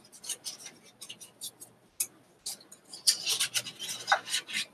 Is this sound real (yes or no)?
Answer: yes